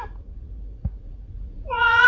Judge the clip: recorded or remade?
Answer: remade